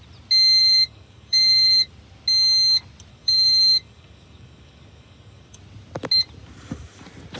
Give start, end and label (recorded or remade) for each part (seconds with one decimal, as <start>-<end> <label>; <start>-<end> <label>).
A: 0.0-0.6 recorded; 0.6-1.9 remade; 1.9-3.1 recorded; 3.1-5.6 remade; 5.6-7.4 recorded